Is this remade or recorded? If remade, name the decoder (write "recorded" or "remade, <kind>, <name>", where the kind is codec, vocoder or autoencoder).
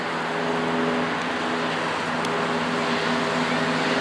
recorded